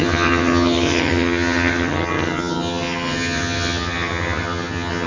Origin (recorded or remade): remade